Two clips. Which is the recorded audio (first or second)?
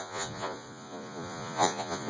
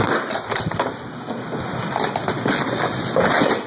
second